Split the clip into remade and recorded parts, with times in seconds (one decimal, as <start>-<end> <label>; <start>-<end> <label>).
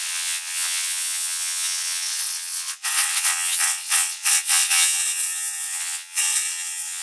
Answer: 0.0-7.0 remade